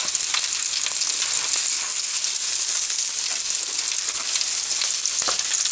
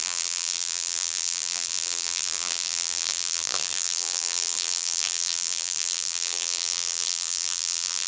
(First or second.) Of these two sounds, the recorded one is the first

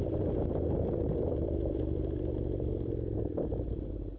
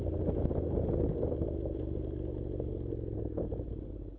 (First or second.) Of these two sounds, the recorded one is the second